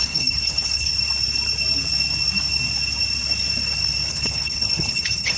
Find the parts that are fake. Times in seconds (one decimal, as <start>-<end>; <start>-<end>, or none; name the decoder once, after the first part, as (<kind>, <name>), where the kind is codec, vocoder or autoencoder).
0.0-0.9 (codec, HILCodec); 4.1-5.4